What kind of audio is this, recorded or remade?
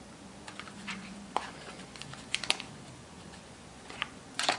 remade